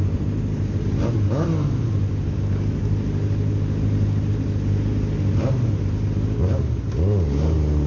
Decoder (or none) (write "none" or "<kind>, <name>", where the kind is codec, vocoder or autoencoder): none